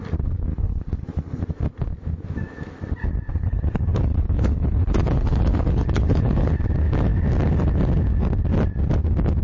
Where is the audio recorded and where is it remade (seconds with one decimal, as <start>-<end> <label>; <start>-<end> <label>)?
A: 0.0-0.5 recorded; 0.5-1.4 remade; 1.4-3.3 recorded; 3.3-6.5 remade; 6.5-9.4 recorded